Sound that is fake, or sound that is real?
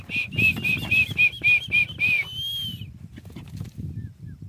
real